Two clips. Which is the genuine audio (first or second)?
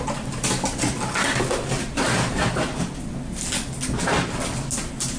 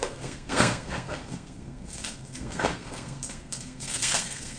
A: first